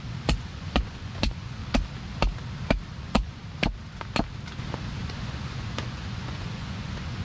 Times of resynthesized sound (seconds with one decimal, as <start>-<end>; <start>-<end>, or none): 0.0-1.6; 3.0-3.4; 5.0-7.2